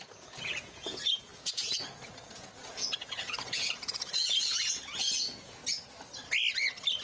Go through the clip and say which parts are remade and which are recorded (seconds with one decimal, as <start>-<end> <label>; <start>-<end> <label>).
0.0-5.6 remade; 5.6-7.0 recorded